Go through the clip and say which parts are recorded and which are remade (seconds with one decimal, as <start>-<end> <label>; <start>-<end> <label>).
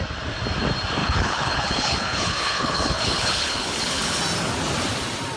0.0-1.0 recorded; 1.0-4.2 remade; 4.2-5.4 recorded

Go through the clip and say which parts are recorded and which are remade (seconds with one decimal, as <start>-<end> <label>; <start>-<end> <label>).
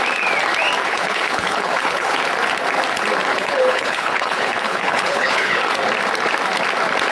0.0-0.8 recorded; 0.8-2.2 remade; 2.2-3.3 recorded; 3.3-5.6 remade; 5.6-7.1 recorded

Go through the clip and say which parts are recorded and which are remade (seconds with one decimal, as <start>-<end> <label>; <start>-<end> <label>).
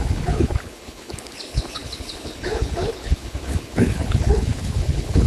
0.0-5.3 remade